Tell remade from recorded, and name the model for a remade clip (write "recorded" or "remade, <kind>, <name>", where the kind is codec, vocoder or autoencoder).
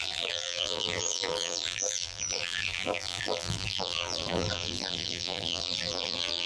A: remade, vocoder, BigVGAN v2